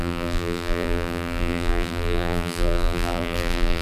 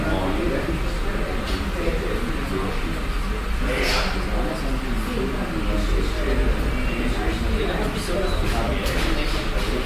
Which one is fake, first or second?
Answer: first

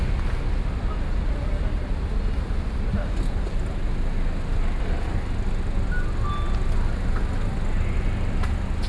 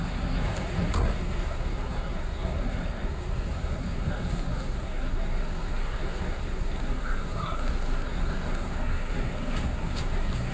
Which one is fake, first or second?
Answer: second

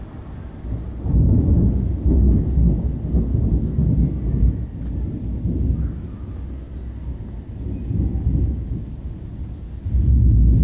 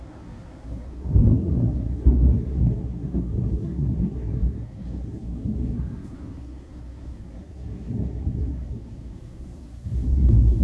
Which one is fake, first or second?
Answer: second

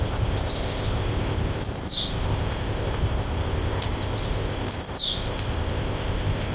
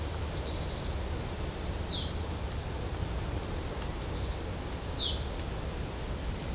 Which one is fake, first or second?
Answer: first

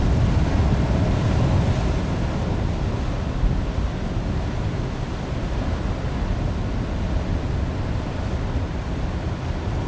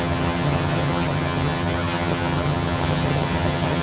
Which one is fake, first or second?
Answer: second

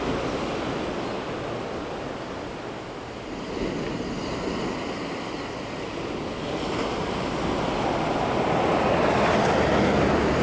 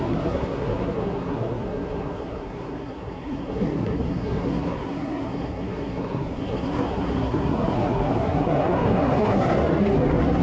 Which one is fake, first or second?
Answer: second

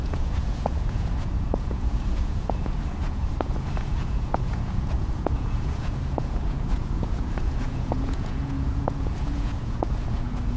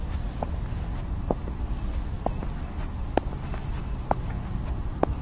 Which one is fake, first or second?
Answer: first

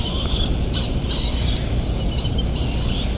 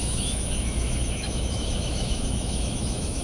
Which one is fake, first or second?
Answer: second